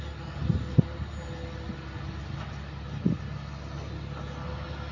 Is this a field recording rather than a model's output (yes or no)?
yes